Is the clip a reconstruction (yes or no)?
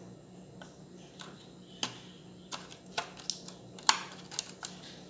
no